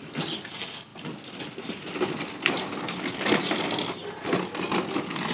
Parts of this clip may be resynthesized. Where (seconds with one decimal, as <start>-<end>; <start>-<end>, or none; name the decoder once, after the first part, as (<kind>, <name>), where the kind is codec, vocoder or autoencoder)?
none